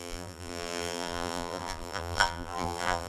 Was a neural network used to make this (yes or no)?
yes